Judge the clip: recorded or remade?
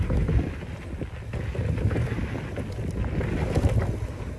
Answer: recorded